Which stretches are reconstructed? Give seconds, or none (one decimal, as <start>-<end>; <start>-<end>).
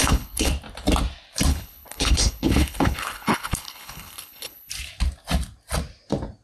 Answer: 0.0-0.5; 1.5-4.7